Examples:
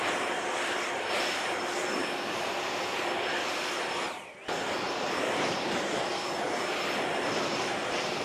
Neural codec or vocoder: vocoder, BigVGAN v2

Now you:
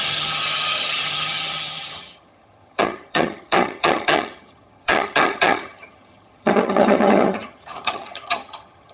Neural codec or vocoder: vocoder, HiFi-GAN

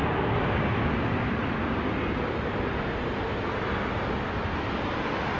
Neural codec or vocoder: none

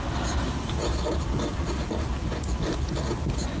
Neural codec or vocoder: none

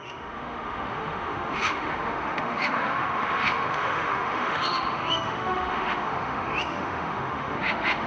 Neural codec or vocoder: autoencoder, DAC-VAE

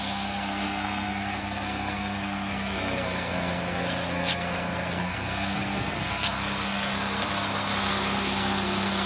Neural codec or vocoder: codec, SNAC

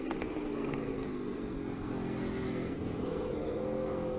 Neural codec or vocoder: codec, SNAC